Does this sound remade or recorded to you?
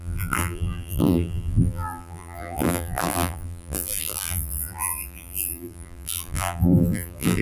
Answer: remade